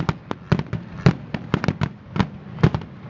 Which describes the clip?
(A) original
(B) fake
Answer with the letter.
A